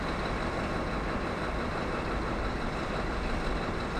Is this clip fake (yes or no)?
no